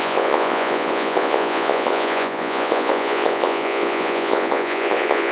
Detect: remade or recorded remade